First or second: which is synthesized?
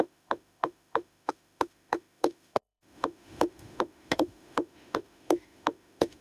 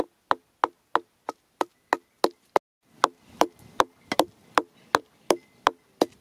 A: first